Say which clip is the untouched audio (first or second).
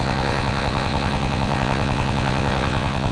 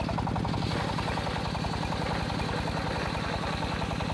second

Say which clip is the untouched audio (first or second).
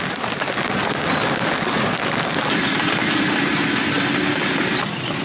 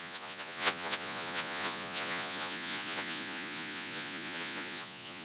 first